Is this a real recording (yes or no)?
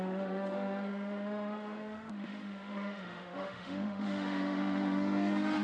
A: no